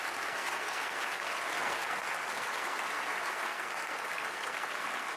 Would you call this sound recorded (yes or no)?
no